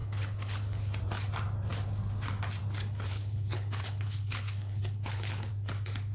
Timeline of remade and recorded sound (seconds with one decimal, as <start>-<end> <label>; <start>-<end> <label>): 0.0-1.0 remade; 1.0-3.1 recorded; 3.1-5.5 remade; 5.5-6.1 recorded